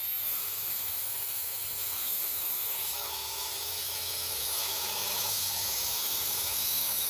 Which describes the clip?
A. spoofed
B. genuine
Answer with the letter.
A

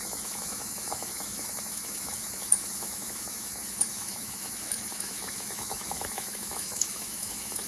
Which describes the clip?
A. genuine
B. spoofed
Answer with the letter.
B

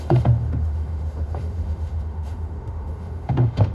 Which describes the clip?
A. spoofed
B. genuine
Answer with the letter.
A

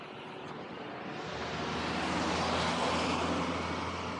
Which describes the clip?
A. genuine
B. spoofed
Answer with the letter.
A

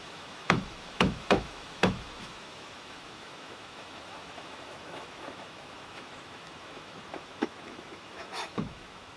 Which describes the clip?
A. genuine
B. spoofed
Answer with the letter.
B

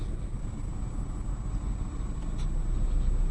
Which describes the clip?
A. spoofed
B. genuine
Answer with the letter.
B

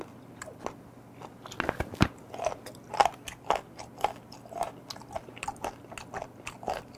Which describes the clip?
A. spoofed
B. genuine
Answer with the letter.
B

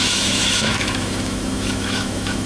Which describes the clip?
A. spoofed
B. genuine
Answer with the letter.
A